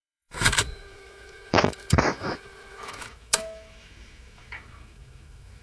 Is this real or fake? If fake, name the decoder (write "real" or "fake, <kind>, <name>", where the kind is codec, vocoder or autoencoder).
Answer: fake, autoencoder, DAC-VAE